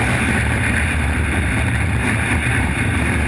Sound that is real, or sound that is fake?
fake